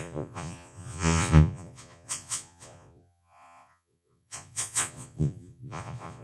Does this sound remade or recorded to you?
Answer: remade